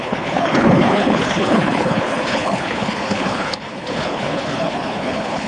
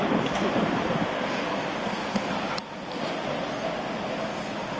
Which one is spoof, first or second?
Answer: first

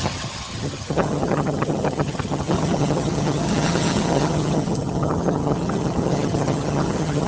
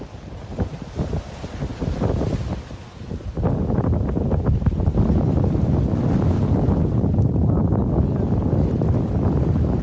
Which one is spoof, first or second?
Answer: first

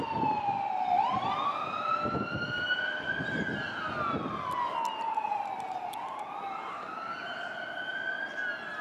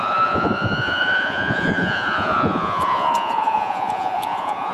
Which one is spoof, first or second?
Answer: second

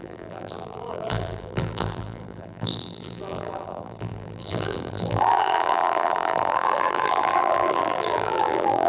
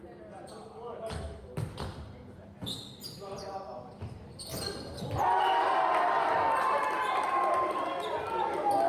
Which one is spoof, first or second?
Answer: first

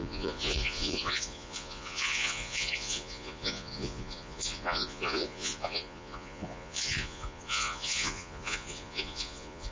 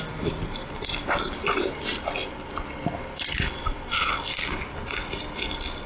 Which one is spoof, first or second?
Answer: first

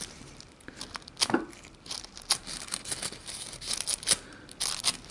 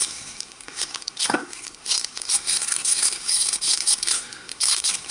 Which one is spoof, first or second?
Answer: second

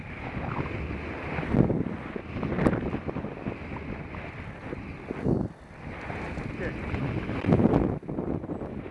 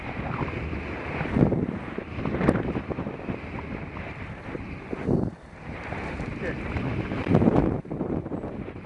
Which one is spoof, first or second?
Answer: second